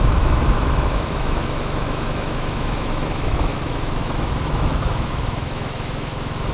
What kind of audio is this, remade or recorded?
remade